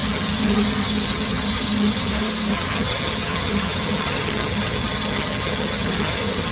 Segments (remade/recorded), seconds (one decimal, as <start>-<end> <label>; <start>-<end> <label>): 0.0-2.1 remade; 2.1-2.5 recorded; 2.5-6.5 remade

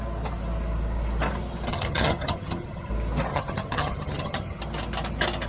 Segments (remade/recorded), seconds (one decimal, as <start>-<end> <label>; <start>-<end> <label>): 0.0-1.7 recorded; 1.7-2.9 remade; 2.9-3.3 recorded; 3.3-4.6 remade; 4.6-5.5 recorded

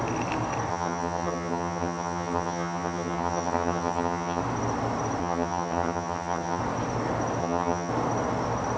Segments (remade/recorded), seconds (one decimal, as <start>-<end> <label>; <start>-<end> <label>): 0.0-0.7 recorded; 0.7-4.4 remade; 4.4-5.2 recorded; 5.2-6.6 remade; 6.6-7.4 recorded; 7.4-7.9 remade; 7.9-8.8 recorded